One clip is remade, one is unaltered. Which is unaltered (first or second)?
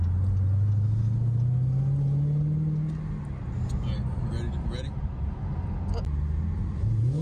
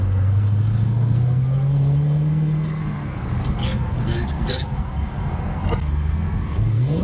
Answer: first